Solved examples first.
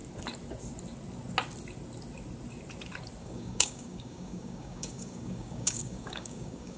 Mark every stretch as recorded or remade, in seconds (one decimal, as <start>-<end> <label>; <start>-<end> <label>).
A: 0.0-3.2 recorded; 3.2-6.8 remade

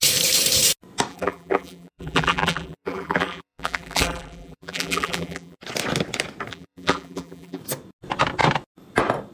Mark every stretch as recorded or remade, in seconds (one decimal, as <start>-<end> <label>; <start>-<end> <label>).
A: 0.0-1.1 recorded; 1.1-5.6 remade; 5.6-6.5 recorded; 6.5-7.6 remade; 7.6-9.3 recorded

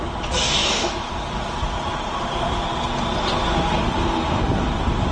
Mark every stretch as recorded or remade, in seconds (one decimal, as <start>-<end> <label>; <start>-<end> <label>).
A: 0.0-0.6 recorded; 0.6-1.1 remade; 1.1-5.1 recorded

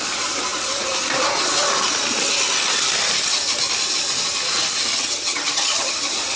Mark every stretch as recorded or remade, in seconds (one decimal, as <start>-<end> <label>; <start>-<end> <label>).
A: 0.0-4.9 recorded; 4.9-5.9 remade; 5.9-6.4 recorded